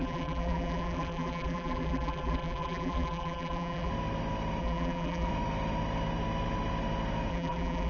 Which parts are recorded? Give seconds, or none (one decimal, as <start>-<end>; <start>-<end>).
3.9-4.6; 5.3-7.3